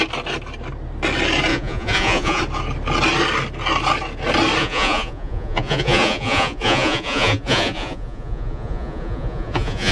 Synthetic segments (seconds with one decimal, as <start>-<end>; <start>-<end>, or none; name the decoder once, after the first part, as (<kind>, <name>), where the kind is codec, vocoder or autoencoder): 1.5-2.4 (vocoder, Vocos); 4.6-9.9